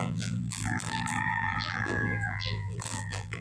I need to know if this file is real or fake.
fake